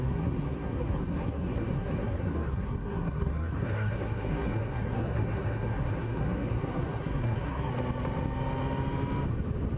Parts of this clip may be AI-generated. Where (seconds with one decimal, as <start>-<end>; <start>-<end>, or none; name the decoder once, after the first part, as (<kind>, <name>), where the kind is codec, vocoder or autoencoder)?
0.0-7.7 (codec, SNAC)